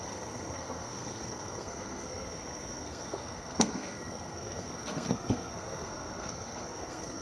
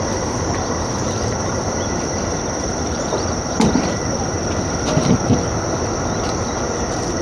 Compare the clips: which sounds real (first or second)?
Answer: second